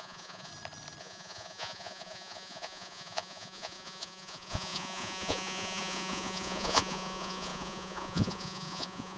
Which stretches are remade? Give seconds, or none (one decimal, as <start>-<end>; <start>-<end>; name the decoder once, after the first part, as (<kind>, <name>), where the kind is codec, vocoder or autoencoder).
0.0-0.5 (vocoder, Vocos); 1.0-9.2